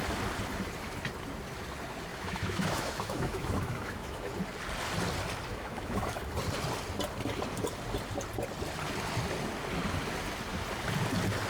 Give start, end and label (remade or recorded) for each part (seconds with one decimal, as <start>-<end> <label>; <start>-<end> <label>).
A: 0.0-2.1 recorded; 2.1-4.3 remade; 4.3-5.5 recorded; 5.5-6.3 remade; 6.3-11.5 recorded